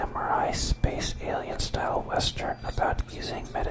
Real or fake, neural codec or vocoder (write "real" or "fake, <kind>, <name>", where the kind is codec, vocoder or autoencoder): real